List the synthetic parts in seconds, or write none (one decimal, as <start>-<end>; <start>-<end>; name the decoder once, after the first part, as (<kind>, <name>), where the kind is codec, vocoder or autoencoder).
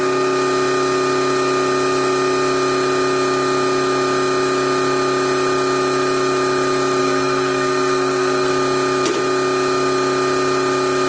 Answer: 7.0-8.5 (codec, SNAC)